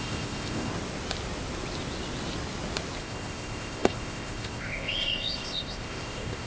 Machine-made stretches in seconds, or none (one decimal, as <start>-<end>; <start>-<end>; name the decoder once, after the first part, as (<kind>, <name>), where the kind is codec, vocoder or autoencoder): 0.0-0.7 (codec, ZipCodec); 3.0-6.5